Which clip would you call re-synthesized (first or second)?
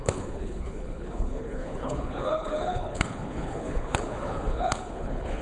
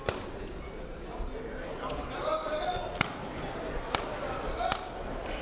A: first